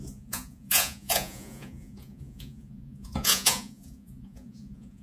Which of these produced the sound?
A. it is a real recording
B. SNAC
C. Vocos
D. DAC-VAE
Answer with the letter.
C